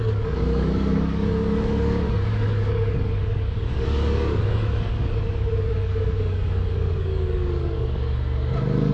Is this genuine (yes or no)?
no